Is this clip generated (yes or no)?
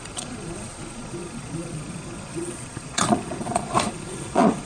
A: yes